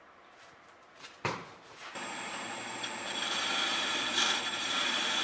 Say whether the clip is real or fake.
fake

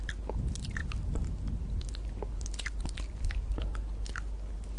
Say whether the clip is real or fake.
real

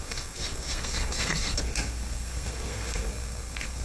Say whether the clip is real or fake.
fake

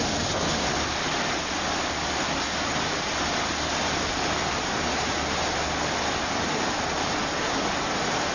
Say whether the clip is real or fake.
real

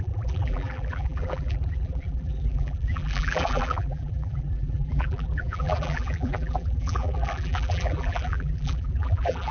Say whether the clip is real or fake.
fake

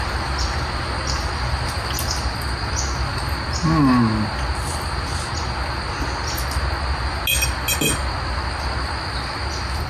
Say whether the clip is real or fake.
real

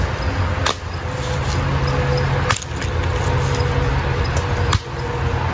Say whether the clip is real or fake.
real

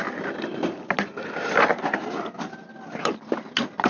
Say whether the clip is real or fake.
real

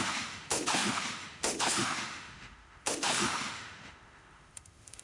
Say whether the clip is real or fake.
fake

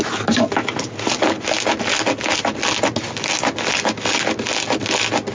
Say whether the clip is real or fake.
real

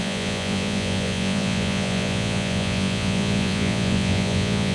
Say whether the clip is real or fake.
fake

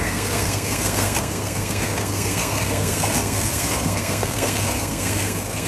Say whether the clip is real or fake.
fake